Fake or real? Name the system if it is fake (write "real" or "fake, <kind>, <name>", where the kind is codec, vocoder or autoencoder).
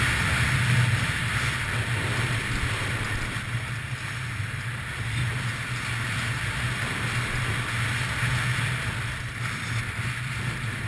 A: real